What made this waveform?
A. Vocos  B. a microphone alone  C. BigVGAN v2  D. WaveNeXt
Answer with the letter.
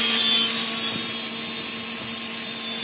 B